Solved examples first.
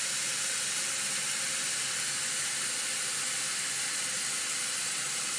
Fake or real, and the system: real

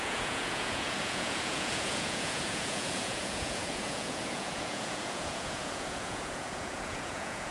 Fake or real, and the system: fake, vocoder, Vocos